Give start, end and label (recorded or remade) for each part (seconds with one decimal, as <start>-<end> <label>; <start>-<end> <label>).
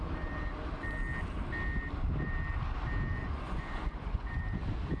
0.0-3.2 recorded; 3.2-4.4 remade; 4.4-5.0 recorded